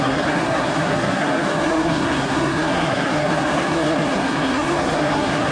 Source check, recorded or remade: remade